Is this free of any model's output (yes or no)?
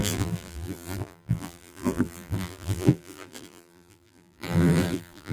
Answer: no